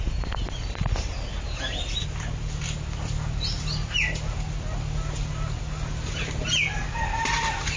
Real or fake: real